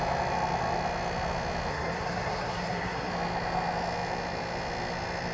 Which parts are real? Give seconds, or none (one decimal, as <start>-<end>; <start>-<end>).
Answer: 0.0-1.7; 3.1-5.3